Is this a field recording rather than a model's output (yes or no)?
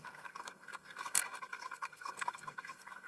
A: no